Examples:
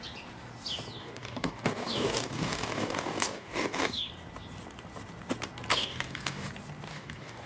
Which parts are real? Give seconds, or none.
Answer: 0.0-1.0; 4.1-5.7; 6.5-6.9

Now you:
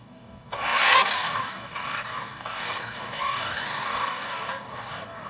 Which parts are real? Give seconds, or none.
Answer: none

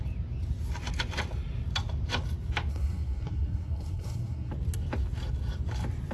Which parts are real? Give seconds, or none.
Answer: 0.0-2.7; 4.5-6.1